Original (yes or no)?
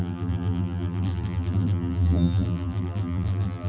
no